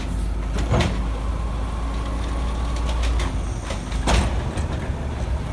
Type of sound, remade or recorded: recorded